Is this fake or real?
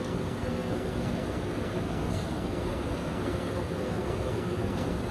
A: fake